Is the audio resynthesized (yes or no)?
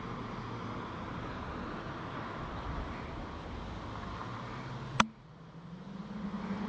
no